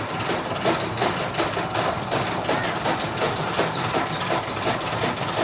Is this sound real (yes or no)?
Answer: yes